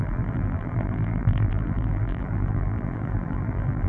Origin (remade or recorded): remade